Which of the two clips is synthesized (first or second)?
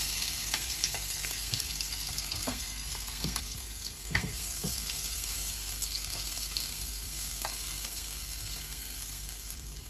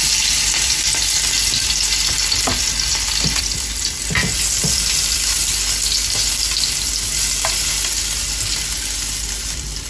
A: first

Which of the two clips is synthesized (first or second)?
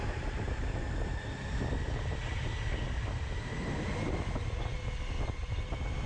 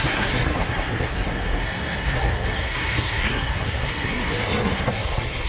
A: second